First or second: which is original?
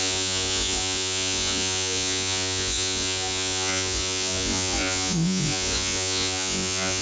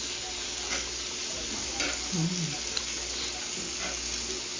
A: second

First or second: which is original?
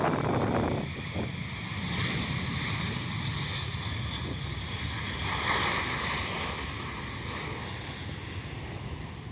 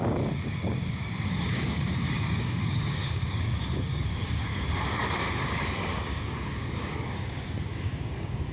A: first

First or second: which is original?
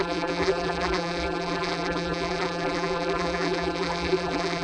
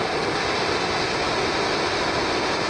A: second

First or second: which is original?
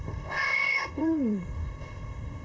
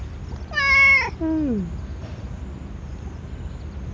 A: second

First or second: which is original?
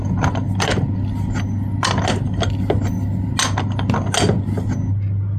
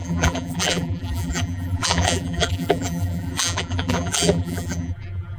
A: first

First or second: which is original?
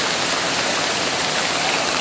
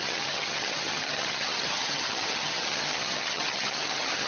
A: first